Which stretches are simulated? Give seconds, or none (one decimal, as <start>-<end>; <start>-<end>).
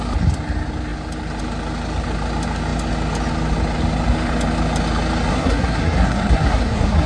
5.3-7.1